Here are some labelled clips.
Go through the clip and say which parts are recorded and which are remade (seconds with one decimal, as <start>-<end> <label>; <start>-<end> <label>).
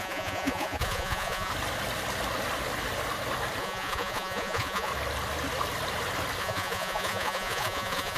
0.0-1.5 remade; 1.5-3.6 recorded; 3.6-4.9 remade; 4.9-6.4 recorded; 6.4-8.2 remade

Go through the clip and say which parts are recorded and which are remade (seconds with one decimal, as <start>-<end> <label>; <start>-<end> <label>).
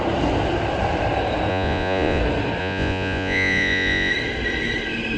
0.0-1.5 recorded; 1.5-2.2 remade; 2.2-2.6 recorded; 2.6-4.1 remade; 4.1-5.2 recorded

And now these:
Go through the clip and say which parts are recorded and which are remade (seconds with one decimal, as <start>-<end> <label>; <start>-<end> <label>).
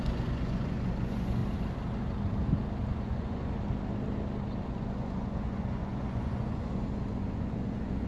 0.0-1.4 remade; 1.4-2.9 recorded; 2.9-3.4 remade; 3.4-4.6 recorded; 4.6-8.1 remade